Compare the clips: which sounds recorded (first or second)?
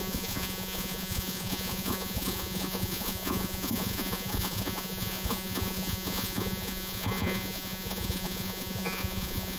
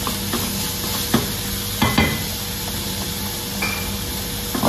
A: second